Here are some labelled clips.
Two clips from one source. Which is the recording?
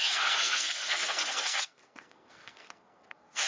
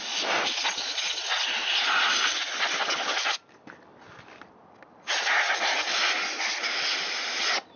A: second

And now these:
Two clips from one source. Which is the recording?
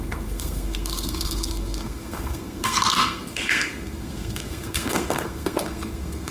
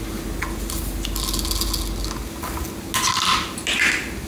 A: second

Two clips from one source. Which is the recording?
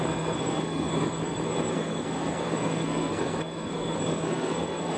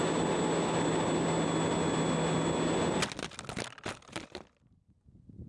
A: second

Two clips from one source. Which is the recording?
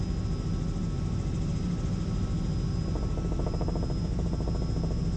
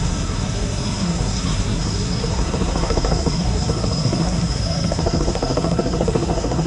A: first